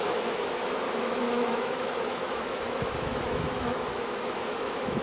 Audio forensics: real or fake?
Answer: fake